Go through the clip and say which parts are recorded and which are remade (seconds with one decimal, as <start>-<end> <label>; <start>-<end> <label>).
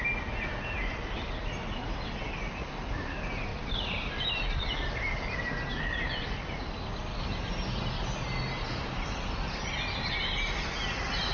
0.0-11.3 recorded